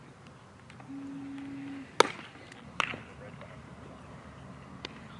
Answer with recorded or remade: recorded